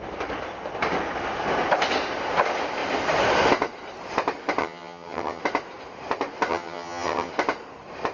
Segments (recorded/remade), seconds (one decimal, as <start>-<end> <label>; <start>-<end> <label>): 0.0-4.6 recorded; 4.6-5.4 remade; 5.4-6.5 recorded; 6.5-7.3 remade; 7.3-8.1 recorded